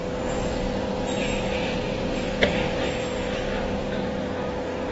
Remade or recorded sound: recorded